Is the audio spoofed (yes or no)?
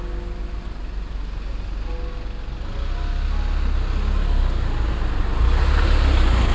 no